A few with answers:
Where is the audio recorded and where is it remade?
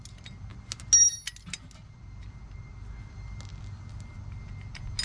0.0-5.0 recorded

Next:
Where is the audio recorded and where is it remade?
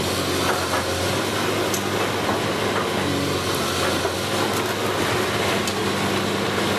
0.0-6.8 recorded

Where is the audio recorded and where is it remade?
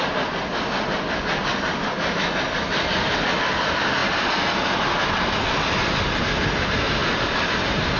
0.0-8.0 recorded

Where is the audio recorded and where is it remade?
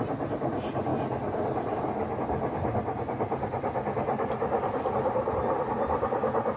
0.0-6.6 recorded